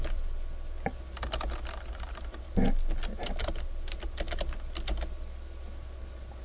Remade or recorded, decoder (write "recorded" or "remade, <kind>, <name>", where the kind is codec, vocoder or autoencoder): recorded